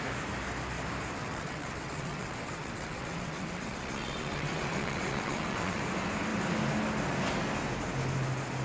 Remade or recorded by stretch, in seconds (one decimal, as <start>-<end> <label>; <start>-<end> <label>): 0.0-1.2 recorded; 1.2-5.8 remade; 5.8-8.6 recorded